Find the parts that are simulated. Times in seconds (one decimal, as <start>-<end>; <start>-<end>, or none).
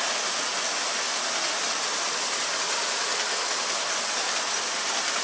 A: none